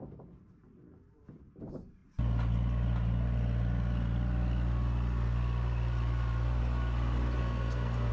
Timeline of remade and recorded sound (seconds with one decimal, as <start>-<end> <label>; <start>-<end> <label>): 0.0-7.4 recorded; 7.4-8.1 remade